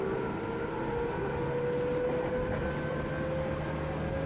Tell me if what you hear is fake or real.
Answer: real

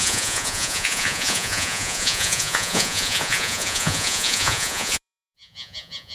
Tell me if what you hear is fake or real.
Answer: fake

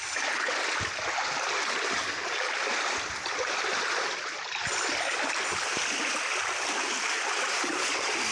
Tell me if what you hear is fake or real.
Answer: real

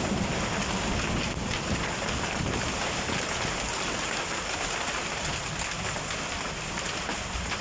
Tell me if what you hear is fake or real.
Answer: real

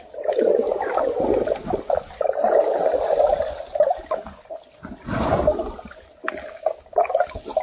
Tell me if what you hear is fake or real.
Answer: real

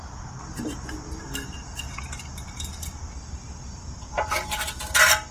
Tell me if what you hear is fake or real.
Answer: real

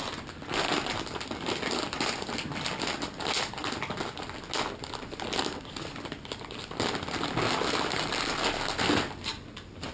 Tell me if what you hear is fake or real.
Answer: real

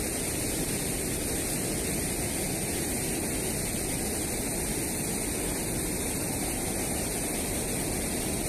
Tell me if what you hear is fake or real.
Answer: real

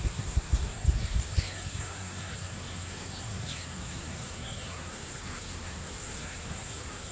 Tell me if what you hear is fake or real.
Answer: fake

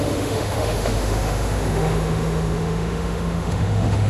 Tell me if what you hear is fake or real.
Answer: fake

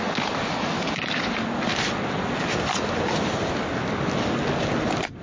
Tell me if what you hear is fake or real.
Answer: real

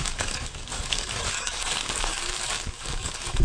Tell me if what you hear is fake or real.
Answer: fake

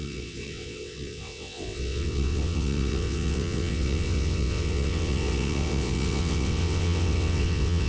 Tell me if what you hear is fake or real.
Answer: fake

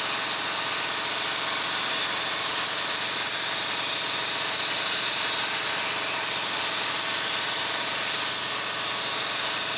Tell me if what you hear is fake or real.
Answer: real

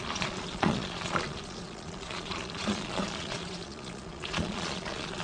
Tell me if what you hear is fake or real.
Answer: fake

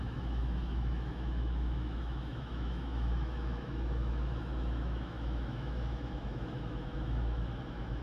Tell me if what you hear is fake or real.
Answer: fake